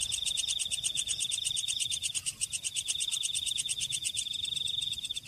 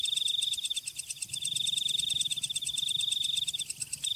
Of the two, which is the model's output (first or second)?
first